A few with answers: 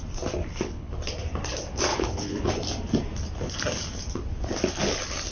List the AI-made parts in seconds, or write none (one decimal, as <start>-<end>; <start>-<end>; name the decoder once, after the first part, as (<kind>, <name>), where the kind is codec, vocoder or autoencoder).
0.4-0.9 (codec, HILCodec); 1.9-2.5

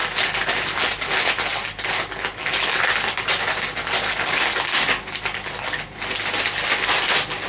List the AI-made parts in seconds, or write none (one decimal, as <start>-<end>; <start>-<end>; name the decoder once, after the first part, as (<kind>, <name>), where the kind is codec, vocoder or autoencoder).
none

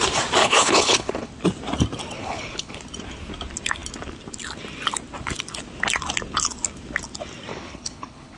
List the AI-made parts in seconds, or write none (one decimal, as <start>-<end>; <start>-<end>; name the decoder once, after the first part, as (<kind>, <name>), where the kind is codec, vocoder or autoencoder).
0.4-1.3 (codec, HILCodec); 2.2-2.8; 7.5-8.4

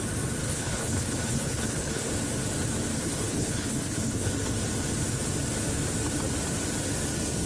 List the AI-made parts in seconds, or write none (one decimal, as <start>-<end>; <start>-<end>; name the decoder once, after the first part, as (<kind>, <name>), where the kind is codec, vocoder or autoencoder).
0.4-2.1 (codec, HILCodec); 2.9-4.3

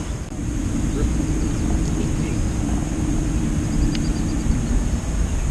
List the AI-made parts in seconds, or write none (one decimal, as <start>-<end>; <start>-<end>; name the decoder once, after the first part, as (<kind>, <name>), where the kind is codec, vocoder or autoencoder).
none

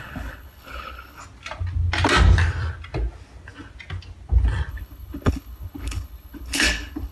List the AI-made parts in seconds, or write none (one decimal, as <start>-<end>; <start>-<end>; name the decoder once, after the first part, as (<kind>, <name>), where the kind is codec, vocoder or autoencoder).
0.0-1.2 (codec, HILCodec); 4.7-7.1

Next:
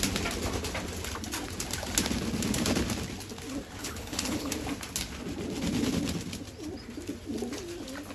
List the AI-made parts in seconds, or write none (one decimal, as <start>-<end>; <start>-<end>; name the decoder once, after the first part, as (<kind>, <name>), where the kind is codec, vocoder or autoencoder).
3.8-4.5 (codec, HILCodec)